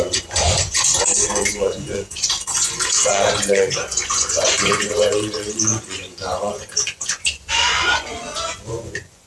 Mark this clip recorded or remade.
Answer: remade